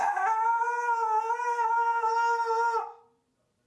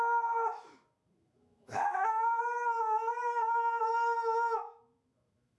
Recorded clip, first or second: first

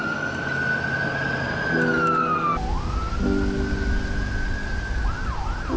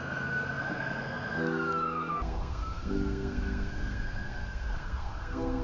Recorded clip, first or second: first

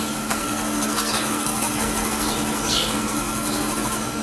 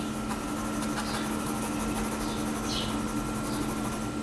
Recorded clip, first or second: second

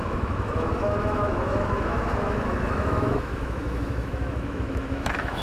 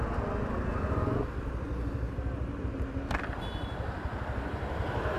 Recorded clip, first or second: second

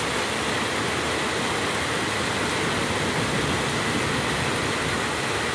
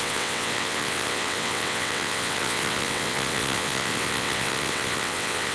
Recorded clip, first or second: first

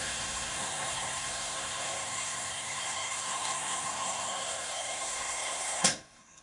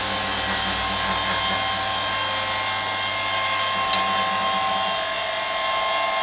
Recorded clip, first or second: second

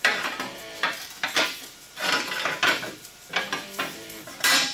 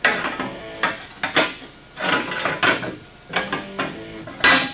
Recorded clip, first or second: second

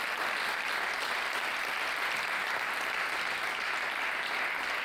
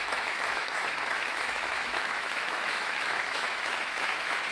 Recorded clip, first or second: first